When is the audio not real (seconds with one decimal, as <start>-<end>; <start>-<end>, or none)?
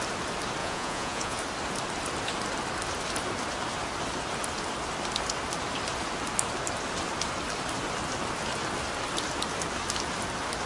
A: 0.6-1.4